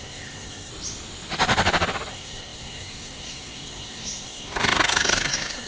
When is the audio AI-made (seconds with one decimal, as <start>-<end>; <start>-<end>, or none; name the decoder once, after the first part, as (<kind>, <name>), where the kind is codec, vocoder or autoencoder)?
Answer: 0.0-0.7 (codec, SNAC); 2.1-5.7